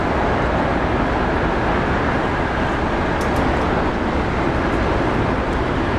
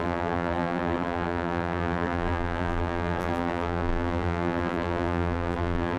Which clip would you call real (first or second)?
first